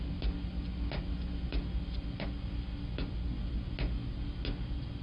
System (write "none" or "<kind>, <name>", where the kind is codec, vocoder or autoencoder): none